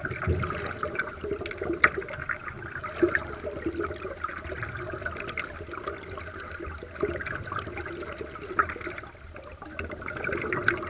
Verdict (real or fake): real